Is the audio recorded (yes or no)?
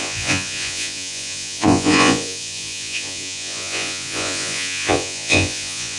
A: no